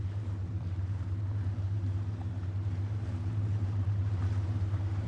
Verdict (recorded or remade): remade